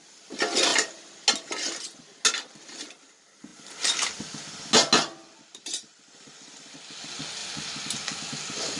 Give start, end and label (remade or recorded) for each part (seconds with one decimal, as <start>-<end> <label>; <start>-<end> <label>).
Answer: 0.0-8.8 recorded